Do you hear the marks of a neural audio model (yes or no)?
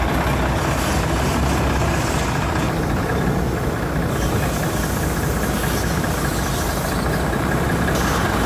no